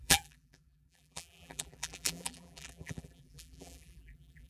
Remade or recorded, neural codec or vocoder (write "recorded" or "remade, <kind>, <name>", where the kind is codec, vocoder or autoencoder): remade, vocoder, BigVGAN v2